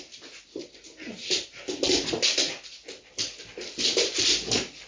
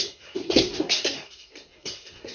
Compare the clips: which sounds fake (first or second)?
second